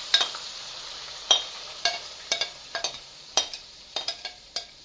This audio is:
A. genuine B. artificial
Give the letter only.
B